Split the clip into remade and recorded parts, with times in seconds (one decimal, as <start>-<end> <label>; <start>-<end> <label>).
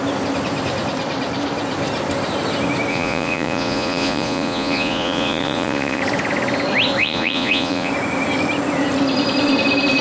0.0-2.9 recorded; 2.9-6.0 remade; 6.0-7.0 recorded; 7.0-7.9 remade; 7.9-10.0 recorded